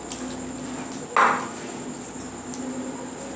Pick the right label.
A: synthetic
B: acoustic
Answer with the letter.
B